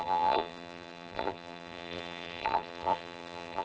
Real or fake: fake